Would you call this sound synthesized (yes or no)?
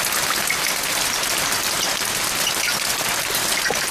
no